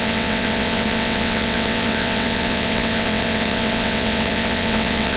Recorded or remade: remade